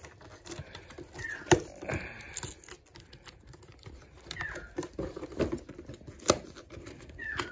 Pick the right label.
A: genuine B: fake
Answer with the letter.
A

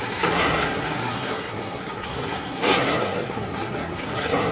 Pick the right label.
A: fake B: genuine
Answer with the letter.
A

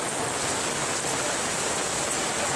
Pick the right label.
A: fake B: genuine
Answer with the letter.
B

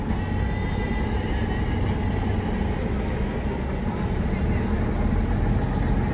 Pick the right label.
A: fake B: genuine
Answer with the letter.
B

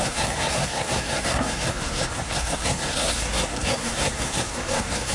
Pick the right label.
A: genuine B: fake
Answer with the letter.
B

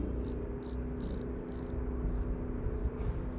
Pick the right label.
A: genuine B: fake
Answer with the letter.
A